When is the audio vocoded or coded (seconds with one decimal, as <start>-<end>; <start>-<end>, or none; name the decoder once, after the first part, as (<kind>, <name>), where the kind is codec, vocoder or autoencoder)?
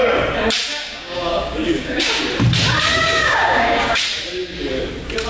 0.7-2.2 (codec, DAC); 2.9-4.0